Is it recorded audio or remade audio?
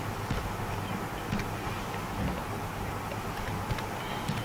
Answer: recorded